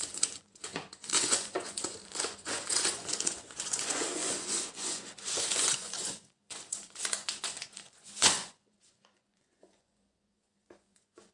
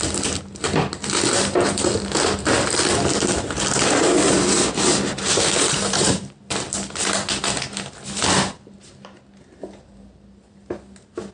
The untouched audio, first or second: second